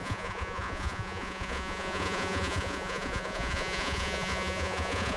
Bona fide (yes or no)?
no